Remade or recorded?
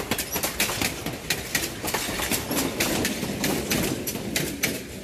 recorded